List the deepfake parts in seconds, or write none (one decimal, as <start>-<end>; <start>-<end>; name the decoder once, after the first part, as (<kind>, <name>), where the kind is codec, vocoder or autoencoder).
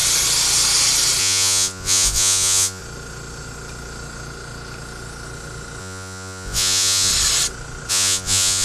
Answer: 1.2-2.8 (vocoder, Vocos); 5.8-7.1; 7.9-8.6